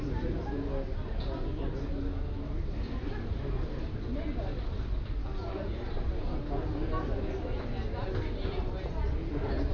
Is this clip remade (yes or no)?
no